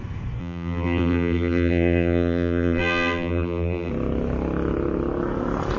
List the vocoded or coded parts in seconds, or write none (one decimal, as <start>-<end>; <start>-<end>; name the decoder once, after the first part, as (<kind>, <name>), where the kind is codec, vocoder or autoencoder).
0.4-3.9 (vocoder, BigVGAN v2)